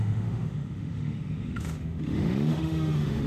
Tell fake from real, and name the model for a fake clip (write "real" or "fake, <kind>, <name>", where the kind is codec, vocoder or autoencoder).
fake, autoencoder, DAC-VAE